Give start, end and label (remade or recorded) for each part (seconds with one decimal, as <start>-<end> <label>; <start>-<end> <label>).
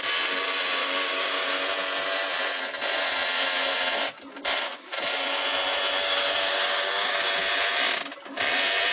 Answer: 0.0-0.8 recorded; 0.8-1.6 remade; 1.6-6.0 recorded; 6.0-7.3 remade; 7.3-8.9 recorded